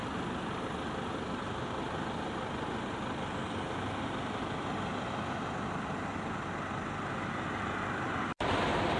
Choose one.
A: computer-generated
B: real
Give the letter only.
B